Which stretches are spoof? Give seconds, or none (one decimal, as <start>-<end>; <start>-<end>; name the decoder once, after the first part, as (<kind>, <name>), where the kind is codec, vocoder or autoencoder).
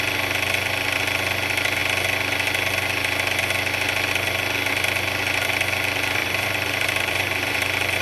6.2-8.0 (vocoder, BigVGAN v2)